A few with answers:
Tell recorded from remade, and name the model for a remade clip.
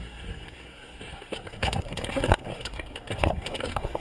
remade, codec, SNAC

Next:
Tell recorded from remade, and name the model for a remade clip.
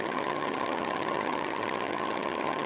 remade, vocoder, HiFi-GAN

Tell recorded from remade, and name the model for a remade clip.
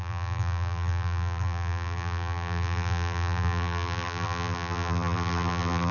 remade, vocoder, BigVGAN v2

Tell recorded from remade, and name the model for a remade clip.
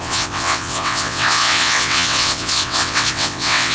remade, vocoder, WaveNeXt